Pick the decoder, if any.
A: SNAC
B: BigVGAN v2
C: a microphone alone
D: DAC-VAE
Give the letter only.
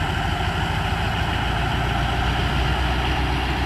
C